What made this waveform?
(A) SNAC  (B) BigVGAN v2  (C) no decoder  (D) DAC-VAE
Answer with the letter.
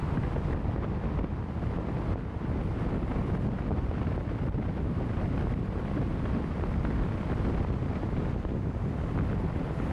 C